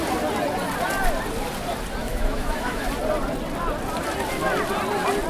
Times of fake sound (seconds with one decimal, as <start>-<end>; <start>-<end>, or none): 2.0-2.9